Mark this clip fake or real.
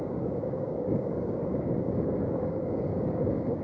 fake